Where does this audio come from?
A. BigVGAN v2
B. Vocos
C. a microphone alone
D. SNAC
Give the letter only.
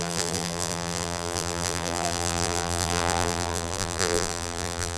A